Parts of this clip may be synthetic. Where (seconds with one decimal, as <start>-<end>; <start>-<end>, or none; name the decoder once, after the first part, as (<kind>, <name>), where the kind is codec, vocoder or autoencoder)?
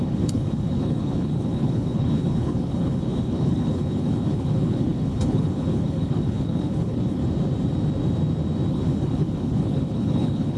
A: 0.0-7.2 (codec, HILCodec); 8.7-10.6